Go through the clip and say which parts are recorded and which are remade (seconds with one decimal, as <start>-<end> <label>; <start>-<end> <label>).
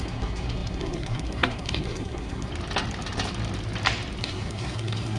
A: 0.0-2.5 remade; 2.5-4.2 recorded; 4.2-5.2 remade